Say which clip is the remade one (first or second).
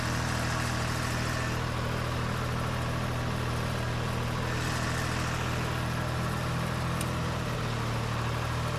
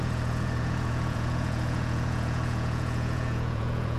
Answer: second